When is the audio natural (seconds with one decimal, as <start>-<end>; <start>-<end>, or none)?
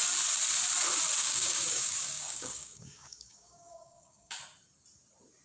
0.0-1.2; 4.4-5.4